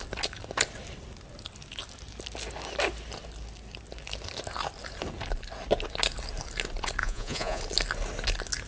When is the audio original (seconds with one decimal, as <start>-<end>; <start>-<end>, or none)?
0.0-7.0; 7.6-8.7